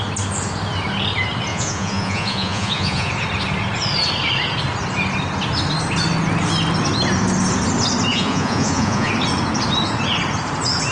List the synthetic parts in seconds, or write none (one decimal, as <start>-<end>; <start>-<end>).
1.5-3.1; 8.1-9.1